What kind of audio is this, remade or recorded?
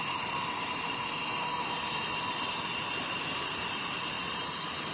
recorded